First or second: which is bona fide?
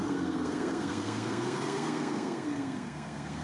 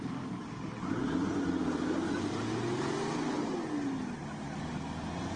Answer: second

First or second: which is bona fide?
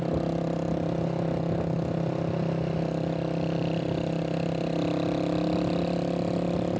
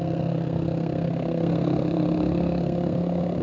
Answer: first